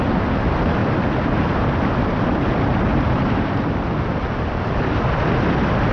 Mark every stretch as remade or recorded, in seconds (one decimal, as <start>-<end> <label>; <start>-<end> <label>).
0.0-0.8 recorded; 0.8-3.6 remade; 3.6-5.9 recorded